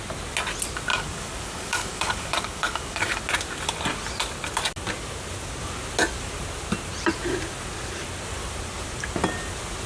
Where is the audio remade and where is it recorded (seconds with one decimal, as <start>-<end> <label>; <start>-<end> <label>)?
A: 0.0-0.9 recorded; 0.9-3.2 remade; 3.2-9.9 recorded